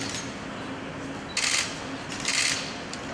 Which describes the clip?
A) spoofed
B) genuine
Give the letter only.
B